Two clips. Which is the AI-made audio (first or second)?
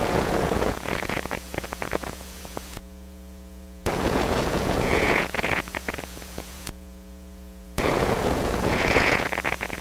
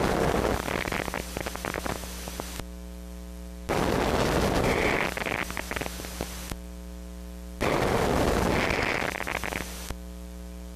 first